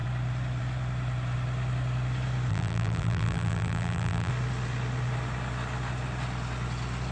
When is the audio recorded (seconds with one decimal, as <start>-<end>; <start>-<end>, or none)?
0.0-2.5; 4.3-7.1